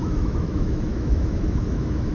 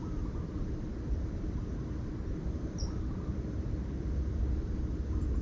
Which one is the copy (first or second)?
first